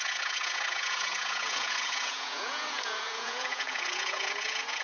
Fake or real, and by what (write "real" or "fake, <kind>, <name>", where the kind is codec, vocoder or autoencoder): fake, vocoder, Vocos